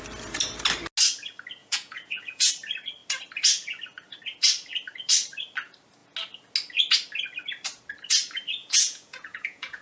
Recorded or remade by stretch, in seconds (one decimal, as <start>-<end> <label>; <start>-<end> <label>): 0.0-1.6 recorded; 1.6-2.5 remade; 2.5-8.6 recorded; 8.6-9.8 remade